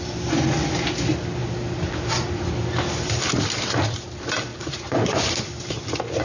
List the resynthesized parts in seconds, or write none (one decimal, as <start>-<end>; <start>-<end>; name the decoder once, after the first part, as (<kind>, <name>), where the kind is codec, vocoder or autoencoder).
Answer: 4.5-5.4 (vocoder, Vocos)

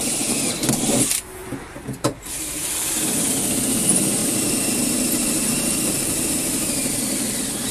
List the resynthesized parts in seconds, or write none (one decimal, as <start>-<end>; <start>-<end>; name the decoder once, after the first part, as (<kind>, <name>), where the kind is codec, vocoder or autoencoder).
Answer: 1.4-2.9 (vocoder, BigVGAN v2); 4.2-7.7

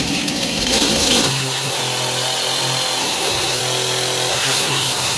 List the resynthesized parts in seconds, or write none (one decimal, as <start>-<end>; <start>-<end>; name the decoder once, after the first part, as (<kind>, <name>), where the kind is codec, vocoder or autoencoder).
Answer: 0.0-1.8 (codec, SNAC); 3.0-3.6; 4.3-5.2

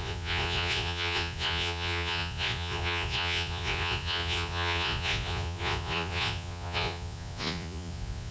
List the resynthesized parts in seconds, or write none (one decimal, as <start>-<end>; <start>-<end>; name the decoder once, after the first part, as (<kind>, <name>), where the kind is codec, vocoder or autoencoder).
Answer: 0.0-8.3 (vocoder, Vocos)

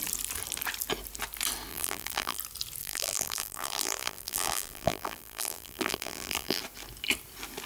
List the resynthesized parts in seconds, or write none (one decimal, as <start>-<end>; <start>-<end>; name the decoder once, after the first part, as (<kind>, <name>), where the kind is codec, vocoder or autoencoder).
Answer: 1.7-2.4 (vocoder, BigVGAN v2); 2.8-6.6

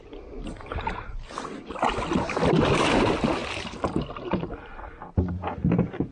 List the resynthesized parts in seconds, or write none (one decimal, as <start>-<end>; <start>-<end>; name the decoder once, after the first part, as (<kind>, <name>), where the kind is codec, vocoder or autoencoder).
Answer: none